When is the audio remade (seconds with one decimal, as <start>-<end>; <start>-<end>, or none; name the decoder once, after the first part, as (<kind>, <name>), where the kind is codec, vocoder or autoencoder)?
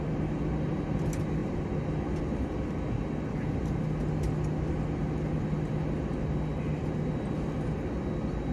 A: none